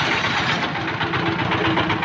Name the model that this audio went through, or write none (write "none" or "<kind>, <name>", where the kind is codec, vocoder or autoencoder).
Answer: none